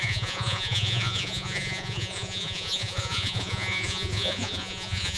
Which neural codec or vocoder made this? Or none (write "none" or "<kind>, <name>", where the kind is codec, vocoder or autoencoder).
vocoder, Vocos